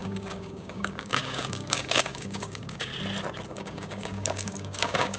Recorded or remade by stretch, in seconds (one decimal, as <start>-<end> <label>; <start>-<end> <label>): 0.0-2.9 remade; 2.9-3.5 recorded; 3.5-5.2 remade